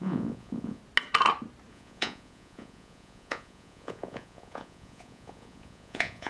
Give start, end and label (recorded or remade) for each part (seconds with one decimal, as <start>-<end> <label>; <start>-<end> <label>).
0.0-0.8 remade; 0.8-1.7 recorded; 1.7-6.3 remade